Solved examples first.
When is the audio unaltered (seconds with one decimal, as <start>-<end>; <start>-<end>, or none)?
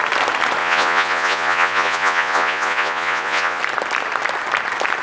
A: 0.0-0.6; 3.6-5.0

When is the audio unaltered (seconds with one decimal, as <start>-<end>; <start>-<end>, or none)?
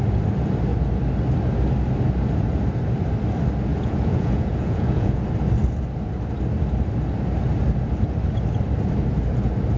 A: 0.0-3.7; 5.2-9.8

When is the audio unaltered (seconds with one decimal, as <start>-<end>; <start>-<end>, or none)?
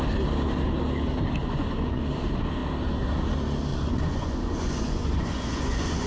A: 0.0-1.4; 2.0-3.7